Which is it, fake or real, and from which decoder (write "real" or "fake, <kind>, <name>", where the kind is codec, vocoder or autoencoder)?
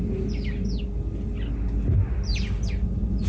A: real